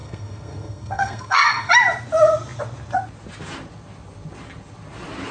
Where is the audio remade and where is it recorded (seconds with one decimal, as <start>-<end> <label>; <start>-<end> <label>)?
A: 0.0-1.7 remade; 1.7-5.3 recorded